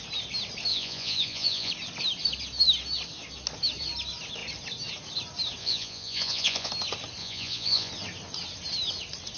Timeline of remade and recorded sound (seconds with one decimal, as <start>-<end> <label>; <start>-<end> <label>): 0.0-0.7 recorded; 0.7-1.7 remade; 1.7-5.6 recorded; 5.6-6.7 remade; 6.7-7.2 recorded; 7.2-7.9 remade; 7.9-9.4 recorded